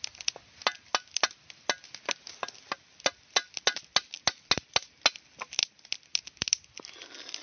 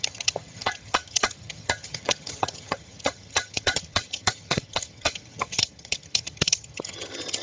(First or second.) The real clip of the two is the first